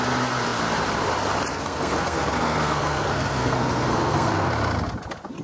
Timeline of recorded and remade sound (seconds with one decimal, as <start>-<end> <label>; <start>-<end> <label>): 0.0-1.5 recorded; 1.5-4.5 remade; 4.5-5.4 recorded

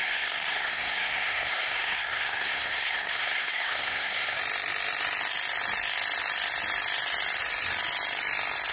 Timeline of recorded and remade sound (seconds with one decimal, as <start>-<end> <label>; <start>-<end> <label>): 0.0-4.4 remade; 4.4-8.7 recorded

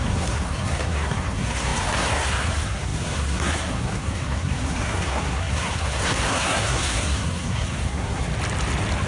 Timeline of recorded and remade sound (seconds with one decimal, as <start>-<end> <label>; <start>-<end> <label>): 0.0-8.3 remade; 8.3-9.1 recorded

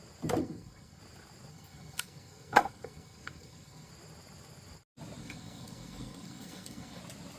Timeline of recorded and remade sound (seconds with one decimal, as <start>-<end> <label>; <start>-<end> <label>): 0.0-0.4 recorded; 0.4-1.0 remade; 1.0-1.5 recorded; 1.5-3.9 remade; 3.9-5.2 recorded; 5.2-7.0 remade; 7.0-7.4 recorded

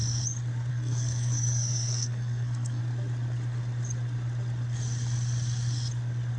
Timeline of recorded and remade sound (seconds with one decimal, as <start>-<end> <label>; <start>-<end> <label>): 0.0-0.7 recorded; 0.7-2.8 remade; 2.8-6.4 recorded

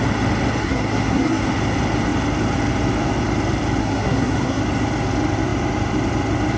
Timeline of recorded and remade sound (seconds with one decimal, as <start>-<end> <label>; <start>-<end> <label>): 0.0-0.6 recorded; 0.6-1.4 remade; 1.4-3.8 recorded; 3.8-4.6 remade; 4.6-6.6 recorded

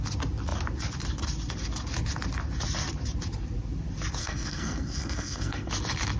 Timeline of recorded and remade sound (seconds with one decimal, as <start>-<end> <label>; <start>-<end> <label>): 0.0-4.2 recorded; 4.2-5.7 remade; 5.7-6.2 recorded